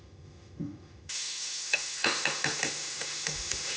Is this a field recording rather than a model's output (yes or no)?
no